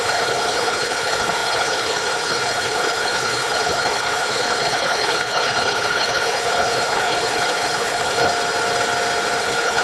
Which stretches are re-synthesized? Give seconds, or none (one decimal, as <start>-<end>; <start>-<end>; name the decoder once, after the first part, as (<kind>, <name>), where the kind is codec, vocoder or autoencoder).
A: 0.0-8.3 (codec, HILCodec); 9.4-9.8